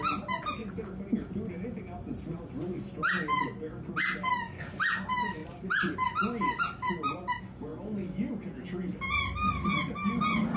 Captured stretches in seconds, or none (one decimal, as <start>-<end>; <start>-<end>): 0.0-10.6